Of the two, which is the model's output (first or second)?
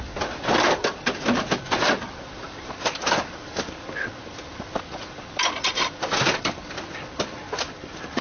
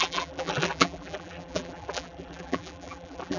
second